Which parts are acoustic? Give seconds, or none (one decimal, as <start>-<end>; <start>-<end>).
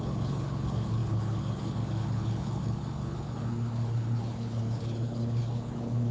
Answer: none